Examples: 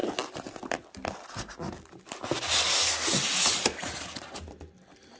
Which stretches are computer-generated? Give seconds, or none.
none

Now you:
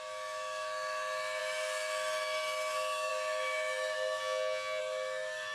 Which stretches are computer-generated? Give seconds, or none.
0.0-4.2 (autoencoder, DAC-VAE); 4.8-5.5

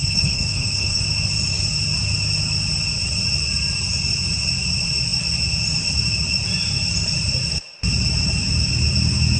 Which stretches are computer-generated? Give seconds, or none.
0.0-1.0 (codec, HILCodec)

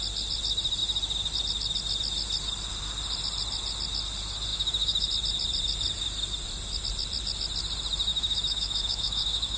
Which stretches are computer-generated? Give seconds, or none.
4.5-5.1 (autoencoder, DAC-VAE); 8.1-9.6